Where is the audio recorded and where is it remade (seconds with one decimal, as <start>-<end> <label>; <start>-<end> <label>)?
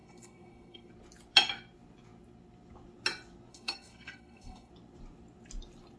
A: 0.0-0.9 remade; 0.9-3.5 recorded; 3.5-4.7 remade; 4.7-6.0 recorded